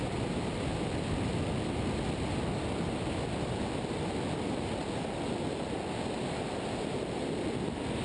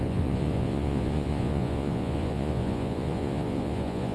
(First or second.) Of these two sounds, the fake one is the second